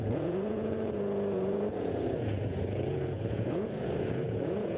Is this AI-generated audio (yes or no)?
yes